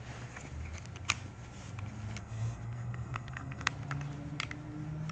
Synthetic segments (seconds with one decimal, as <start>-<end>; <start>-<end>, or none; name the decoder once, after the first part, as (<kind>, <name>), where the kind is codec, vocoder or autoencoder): 2.2-3.7 (codec, SNAC)